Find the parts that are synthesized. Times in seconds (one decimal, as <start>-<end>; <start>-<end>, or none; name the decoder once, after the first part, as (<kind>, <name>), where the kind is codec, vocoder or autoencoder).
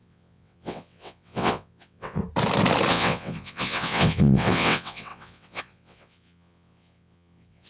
0.0-2.2 (vocoder, WaveNeXt); 2.9-7.7